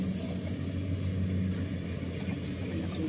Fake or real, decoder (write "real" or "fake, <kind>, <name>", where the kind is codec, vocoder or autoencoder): real